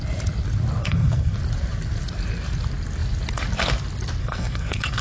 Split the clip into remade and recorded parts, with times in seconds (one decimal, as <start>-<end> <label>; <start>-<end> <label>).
0.0-0.8 recorded; 0.8-1.4 remade; 1.4-4.2 recorded; 4.2-5.0 remade